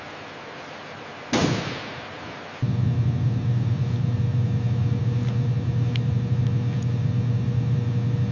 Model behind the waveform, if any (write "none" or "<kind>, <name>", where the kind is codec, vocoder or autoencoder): none